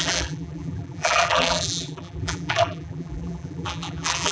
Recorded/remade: remade